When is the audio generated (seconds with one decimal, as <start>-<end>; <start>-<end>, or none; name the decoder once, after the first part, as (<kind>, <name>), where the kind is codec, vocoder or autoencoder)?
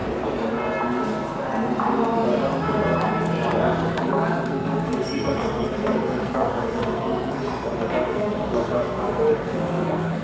3.9-7.4 (codec, SNAC); 7.9-10.2